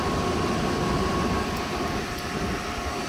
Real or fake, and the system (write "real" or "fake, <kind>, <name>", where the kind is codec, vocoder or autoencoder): real